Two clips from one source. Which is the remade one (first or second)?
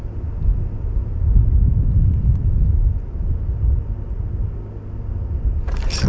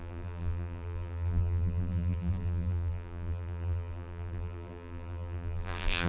second